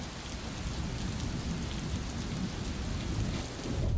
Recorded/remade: recorded